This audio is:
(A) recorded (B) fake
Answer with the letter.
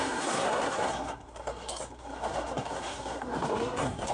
B